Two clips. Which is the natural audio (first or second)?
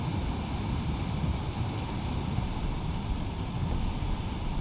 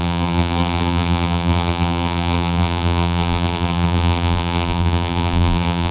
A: first